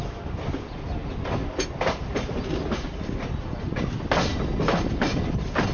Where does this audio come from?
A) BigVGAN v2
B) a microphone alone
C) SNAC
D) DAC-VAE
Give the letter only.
B